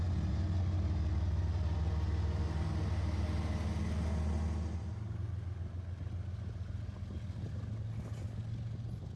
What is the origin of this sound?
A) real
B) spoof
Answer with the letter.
A